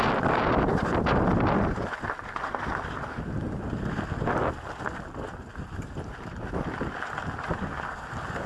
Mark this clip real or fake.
real